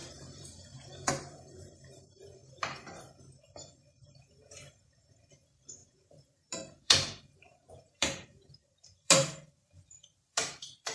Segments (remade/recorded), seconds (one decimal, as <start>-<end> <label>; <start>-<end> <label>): 0.0-2.4 remade; 2.4-5.3 recorded; 5.3-10.9 remade